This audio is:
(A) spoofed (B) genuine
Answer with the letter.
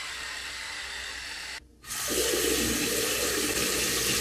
B